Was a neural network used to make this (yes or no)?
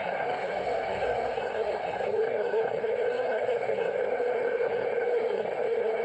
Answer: yes